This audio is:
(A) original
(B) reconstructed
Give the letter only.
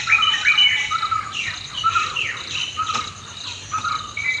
A